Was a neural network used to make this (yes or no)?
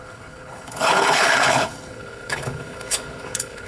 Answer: yes